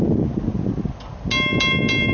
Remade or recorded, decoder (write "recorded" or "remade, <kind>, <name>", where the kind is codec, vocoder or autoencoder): recorded